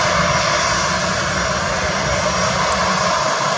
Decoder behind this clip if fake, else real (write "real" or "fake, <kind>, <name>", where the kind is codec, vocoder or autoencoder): real